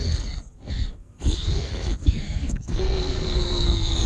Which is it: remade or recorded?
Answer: remade